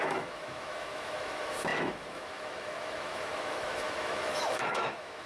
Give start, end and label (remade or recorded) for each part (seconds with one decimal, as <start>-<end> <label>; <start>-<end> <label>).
0.0-5.3 remade